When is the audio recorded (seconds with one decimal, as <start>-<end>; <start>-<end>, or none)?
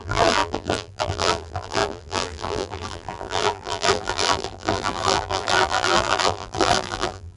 none